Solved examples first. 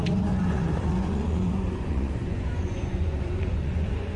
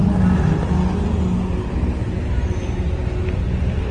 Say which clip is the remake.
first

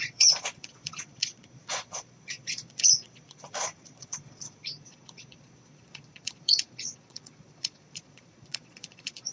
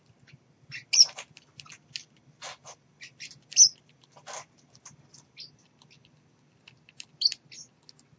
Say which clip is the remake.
first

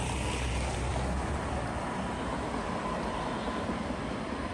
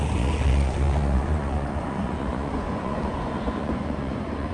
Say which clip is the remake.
second